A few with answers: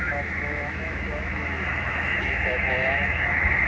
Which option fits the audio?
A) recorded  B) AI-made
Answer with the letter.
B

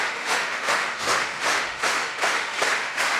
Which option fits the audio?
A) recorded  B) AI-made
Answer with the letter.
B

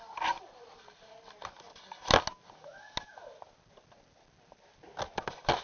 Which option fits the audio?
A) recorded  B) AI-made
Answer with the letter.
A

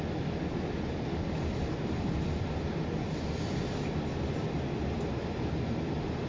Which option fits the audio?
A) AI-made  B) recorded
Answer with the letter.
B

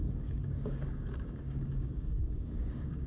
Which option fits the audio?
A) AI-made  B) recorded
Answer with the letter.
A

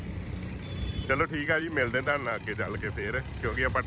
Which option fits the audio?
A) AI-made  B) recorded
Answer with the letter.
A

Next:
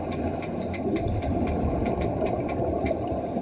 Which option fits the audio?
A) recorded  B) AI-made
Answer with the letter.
A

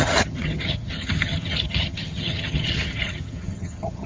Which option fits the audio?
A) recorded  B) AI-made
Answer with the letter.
B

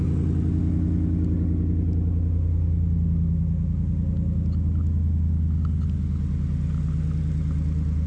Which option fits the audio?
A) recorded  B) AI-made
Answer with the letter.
A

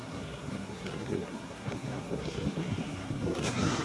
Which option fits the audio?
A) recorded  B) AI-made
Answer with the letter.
B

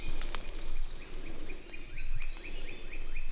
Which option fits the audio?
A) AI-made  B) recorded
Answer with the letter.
B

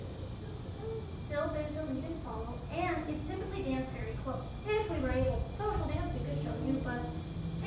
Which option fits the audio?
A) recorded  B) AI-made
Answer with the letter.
A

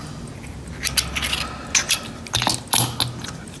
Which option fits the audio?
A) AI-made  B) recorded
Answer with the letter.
B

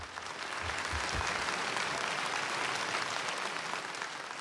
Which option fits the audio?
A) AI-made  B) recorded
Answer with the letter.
B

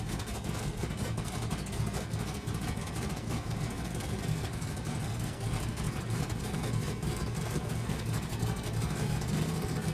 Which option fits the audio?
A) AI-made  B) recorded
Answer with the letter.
A